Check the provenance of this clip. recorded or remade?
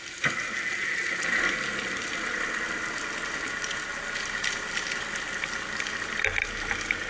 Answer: recorded